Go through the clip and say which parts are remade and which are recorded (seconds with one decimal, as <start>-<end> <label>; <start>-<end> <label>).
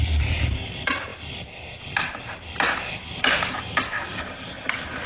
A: 0.0-1.1 remade; 1.1-4.2 recorded; 4.2-5.1 remade